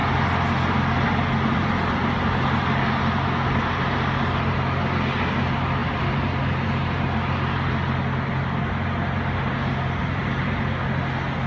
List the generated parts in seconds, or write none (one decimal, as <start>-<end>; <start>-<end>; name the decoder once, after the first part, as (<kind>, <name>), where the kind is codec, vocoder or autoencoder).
5.8-6.4 (vocoder, BigVGAN v2); 10.0-10.6